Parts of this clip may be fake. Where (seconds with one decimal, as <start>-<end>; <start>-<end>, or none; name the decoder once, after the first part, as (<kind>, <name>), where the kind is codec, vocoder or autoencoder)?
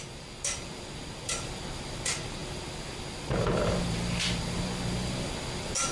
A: none